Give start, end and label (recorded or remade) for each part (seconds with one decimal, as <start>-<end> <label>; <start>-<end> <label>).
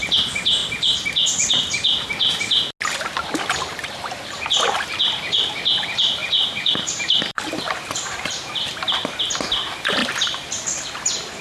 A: 0.0-6.2 recorded; 6.2-9.2 remade; 9.2-11.4 recorded